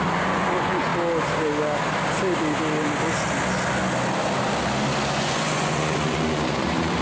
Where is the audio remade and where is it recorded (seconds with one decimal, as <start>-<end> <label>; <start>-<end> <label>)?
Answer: 0.0-0.9 remade; 0.9-5.1 recorded; 5.1-7.0 remade